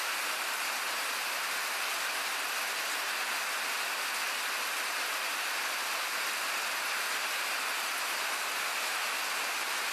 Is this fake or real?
real